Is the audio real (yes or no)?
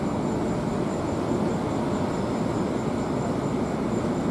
yes